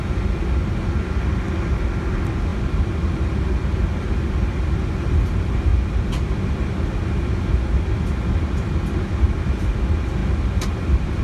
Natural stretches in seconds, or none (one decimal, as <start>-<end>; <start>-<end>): 0.0-11.2